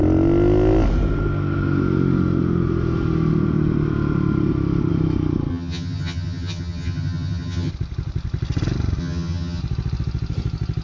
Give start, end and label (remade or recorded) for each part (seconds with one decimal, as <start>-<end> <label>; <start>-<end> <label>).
0.0-5.5 recorded; 5.5-7.7 remade; 7.7-9.0 recorded; 9.0-9.6 remade; 9.6-10.8 recorded